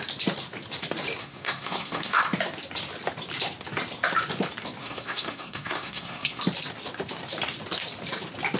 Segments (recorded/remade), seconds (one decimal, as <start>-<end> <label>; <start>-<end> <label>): 0.0-1.2 recorded; 1.2-2.2 remade; 2.2-4.8 recorded; 4.8-6.4 remade; 6.4-8.6 recorded